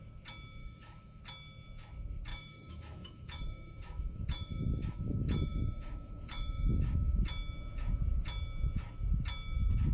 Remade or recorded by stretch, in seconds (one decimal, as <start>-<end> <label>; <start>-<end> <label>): 0.0-0.6 recorded; 0.6-1.2 remade; 1.2-2.3 recorded; 2.3-7.2 remade; 7.2-9.9 recorded